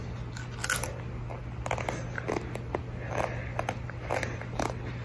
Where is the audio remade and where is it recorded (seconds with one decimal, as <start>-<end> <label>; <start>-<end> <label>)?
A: 0.0-5.0 recorded

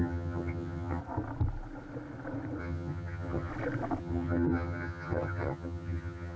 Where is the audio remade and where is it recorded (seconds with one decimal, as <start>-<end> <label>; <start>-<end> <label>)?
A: 0.0-1.0 remade; 1.0-2.6 recorded; 2.6-3.5 remade; 3.5-4.0 recorded; 4.0-6.4 remade

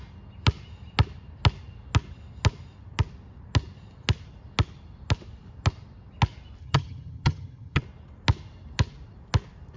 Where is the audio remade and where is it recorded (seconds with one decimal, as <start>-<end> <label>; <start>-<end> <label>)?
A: 0.0-6.6 recorded; 6.6-7.8 remade; 7.8-9.8 recorded

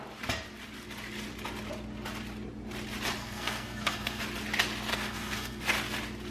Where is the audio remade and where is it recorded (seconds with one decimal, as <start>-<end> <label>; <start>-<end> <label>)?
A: 0.0-3.2 recorded; 3.2-4.2 remade; 4.2-4.9 recorded; 4.9-5.6 remade; 5.6-6.3 recorded